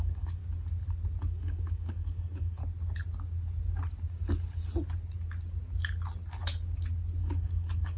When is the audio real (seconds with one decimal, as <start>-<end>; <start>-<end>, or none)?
0.4-1.2; 2.6-7.2